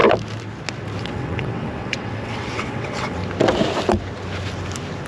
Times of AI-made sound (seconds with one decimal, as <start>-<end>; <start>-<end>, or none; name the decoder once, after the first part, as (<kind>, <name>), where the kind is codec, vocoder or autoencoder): 1.0-3.2 (vocoder, WaveNeXt)